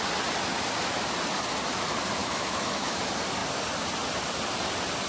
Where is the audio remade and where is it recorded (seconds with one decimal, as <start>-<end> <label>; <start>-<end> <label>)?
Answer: 0.0-2.2 recorded; 2.2-3.0 remade; 3.0-5.1 recorded

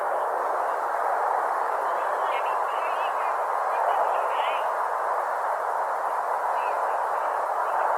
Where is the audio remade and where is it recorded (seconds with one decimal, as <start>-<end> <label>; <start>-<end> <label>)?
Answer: 0.0-8.0 recorded

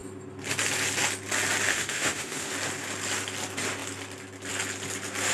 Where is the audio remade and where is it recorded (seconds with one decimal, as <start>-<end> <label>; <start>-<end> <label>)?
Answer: 0.0-1.7 recorded; 1.7-2.5 remade; 2.5-5.3 recorded

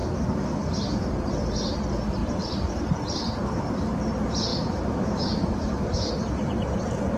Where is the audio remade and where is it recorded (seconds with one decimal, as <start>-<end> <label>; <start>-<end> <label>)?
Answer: 0.0-0.6 remade; 0.6-4.5 recorded; 4.5-6.1 remade; 6.1-7.2 recorded

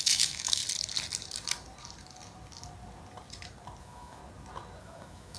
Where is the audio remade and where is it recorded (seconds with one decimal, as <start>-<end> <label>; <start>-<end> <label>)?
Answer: 0.0-0.6 remade; 0.6-3.8 recorded; 3.8-4.2 remade; 4.2-4.8 recorded; 4.8-5.4 remade

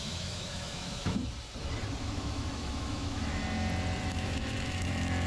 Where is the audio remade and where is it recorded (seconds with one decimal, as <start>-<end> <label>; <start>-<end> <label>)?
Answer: 0.0-1.2 remade; 1.2-2.0 recorded; 2.0-3.4 remade; 3.4-4.0 recorded; 4.0-5.3 remade